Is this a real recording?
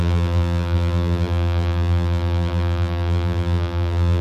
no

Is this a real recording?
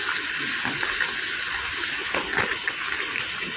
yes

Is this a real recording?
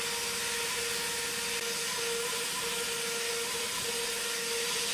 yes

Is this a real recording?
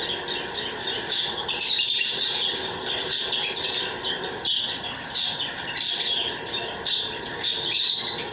no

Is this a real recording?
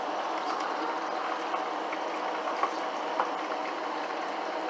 no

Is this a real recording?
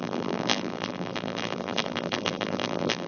no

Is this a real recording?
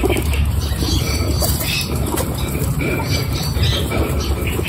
no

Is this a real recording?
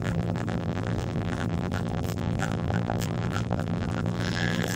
no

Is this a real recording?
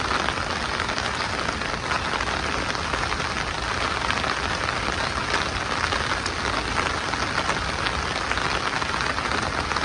yes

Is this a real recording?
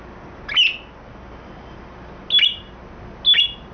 yes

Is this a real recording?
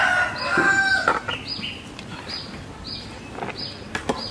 yes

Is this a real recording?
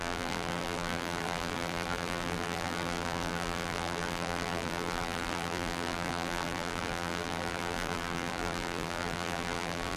no